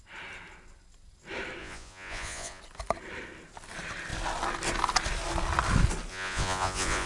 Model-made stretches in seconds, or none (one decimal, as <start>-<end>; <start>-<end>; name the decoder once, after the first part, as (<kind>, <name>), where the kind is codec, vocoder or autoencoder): 1.6-2.6 (vocoder, Vocos); 6.1-7.1